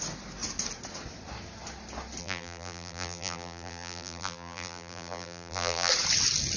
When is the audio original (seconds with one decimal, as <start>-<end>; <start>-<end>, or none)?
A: 0.0-2.2; 5.9-6.6